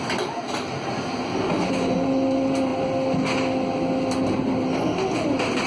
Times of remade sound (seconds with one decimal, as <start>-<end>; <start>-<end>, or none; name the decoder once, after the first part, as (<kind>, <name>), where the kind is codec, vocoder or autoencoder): none